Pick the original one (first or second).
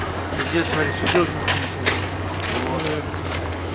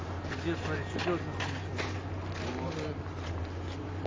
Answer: second